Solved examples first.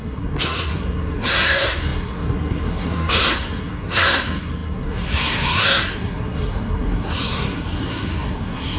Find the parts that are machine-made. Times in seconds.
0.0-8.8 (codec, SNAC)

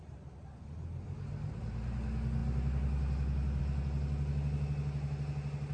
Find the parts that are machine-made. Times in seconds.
none

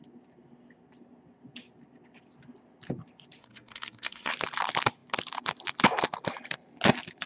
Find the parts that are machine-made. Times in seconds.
3.4-4.3 (codec, SNAC)

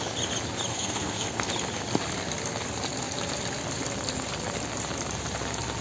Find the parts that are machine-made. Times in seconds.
0.7-1.5 (codec, SNAC)

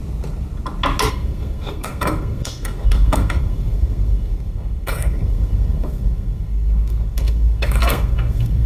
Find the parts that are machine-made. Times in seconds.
1.1-8.7 (codec, SNAC)